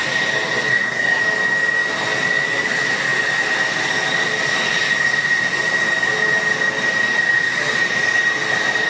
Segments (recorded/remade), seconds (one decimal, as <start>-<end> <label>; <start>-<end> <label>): 0.0-0.7 recorded; 0.7-1.2 remade; 1.2-8.9 recorded